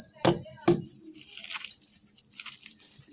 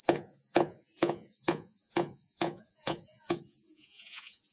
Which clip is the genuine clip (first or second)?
first